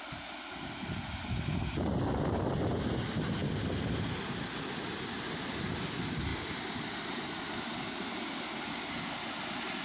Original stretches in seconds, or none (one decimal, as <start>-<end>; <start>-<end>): 0.0-6.3; 7.7-9.8